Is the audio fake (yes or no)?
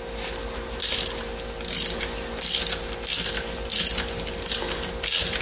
no